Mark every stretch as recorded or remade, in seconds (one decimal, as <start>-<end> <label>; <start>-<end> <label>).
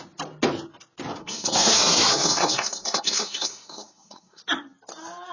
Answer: 0.0-1.2 recorded; 1.2-4.4 remade; 4.4-5.3 recorded